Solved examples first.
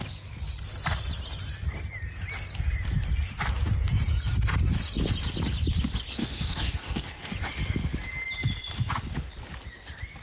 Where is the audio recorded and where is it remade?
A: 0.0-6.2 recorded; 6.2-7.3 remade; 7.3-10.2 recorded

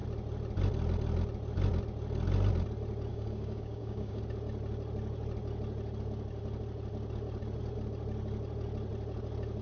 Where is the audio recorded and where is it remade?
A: 0.0-3.1 recorded; 3.1-4.2 remade; 4.2-9.6 recorded

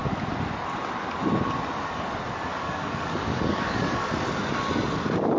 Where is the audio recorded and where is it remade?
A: 0.0-2.5 recorded; 2.5-4.0 remade; 4.0-5.4 recorded

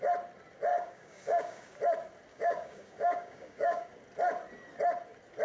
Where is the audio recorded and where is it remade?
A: 0.0-0.7 recorded; 0.7-1.7 remade; 1.7-2.3 recorded; 2.3-3.9 remade; 3.9-5.4 recorded

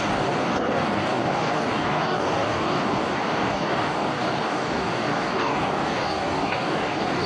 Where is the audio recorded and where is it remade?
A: 0.0-7.3 remade

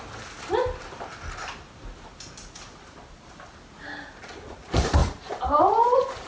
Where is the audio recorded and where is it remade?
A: 0.0-6.3 recorded

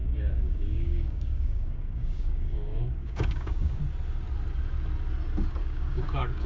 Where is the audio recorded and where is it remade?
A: 0.0-3.8 remade; 3.8-5.6 recorded; 5.6-6.5 remade

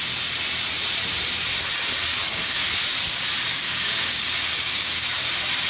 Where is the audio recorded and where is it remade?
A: 0.0-2.1 recorded; 2.1-2.6 remade; 2.6-3.5 recorded; 3.5-5.2 remade; 5.2-5.7 recorded